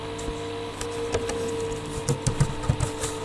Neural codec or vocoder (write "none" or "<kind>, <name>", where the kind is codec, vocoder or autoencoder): none